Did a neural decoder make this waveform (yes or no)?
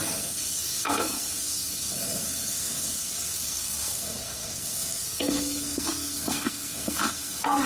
yes